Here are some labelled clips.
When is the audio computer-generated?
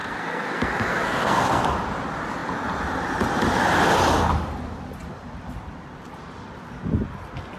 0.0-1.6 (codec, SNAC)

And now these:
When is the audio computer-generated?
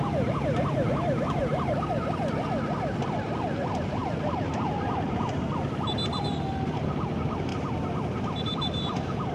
1.4-2.3 (vocoder, BigVGAN v2); 7.5-9.3